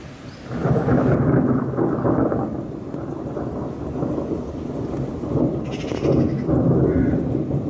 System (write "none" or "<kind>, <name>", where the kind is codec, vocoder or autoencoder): none